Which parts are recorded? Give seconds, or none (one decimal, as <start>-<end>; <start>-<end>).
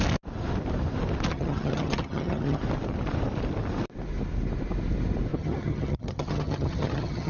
0.0-1.3; 2.6-5.3